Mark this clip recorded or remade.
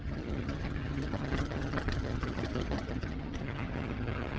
remade